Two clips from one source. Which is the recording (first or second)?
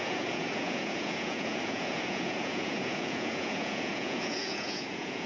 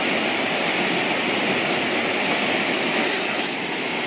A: second